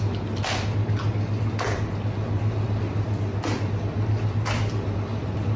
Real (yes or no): yes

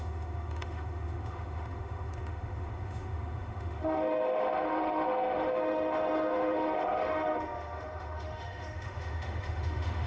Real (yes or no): no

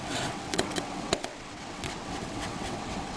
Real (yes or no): no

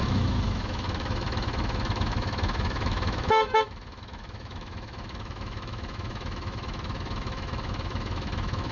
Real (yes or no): no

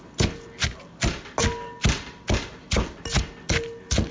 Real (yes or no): yes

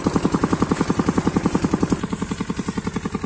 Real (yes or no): yes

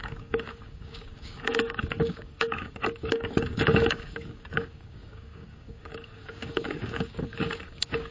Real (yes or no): no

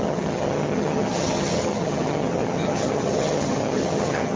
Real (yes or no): no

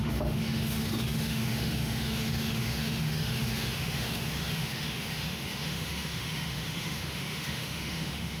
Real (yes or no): no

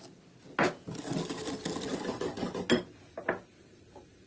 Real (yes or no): yes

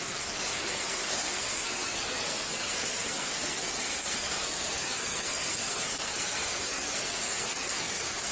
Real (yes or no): no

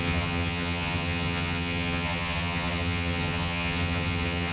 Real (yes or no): no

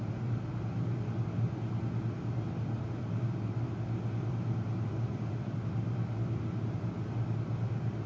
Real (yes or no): yes